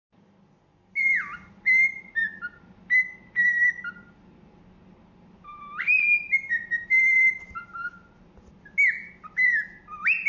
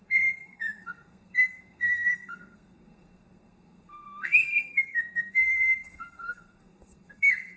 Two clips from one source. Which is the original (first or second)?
first